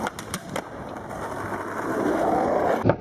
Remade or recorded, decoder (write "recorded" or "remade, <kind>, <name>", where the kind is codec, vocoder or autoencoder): recorded